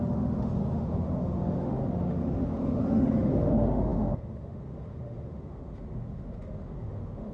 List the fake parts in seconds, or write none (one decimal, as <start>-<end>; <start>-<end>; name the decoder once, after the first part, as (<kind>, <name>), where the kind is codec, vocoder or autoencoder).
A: 0.0-7.3 (autoencoder, DAC-VAE)